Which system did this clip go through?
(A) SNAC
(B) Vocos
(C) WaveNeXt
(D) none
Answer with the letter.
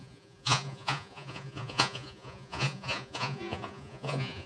B